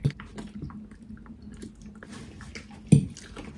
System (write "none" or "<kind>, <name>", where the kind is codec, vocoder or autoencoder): none